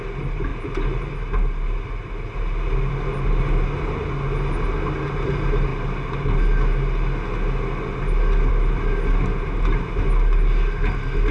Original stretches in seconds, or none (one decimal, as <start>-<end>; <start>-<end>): 0.0-11.3